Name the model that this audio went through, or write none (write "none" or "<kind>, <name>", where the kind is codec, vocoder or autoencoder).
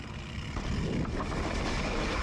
none